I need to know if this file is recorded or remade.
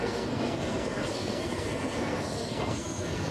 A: remade